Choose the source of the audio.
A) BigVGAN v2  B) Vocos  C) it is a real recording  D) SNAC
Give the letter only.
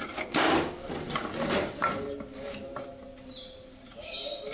C